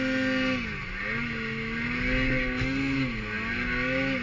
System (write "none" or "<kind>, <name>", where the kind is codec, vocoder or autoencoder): none